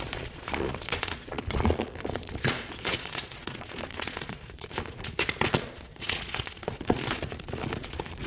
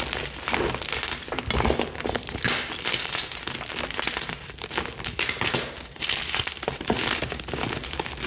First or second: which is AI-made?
first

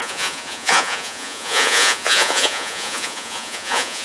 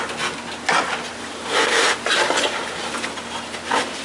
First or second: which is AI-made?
first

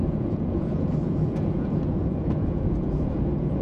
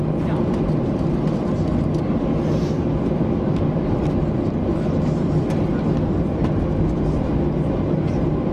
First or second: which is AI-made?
first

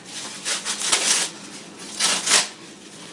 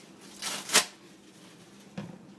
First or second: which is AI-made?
first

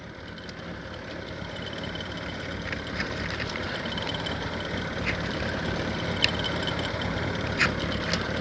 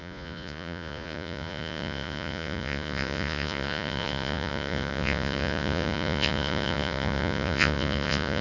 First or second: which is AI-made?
second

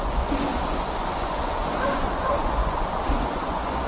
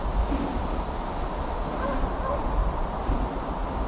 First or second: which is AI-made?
first